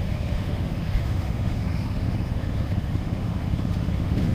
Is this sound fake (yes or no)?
yes